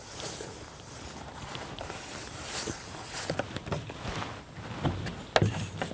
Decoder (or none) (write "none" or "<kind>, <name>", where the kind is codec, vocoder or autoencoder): none